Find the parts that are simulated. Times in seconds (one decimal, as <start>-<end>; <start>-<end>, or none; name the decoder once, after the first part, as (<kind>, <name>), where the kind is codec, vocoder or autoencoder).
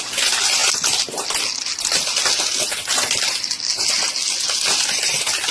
none